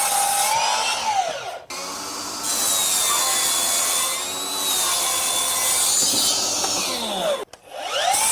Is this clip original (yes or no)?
yes